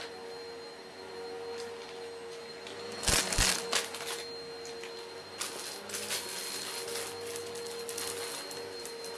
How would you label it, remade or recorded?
recorded